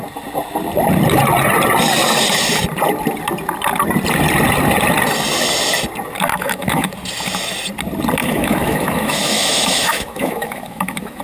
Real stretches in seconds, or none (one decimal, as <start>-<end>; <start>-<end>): 0.0-6.3; 6.9-8.2